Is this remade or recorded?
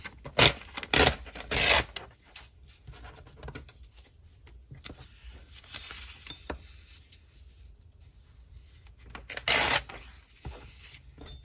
recorded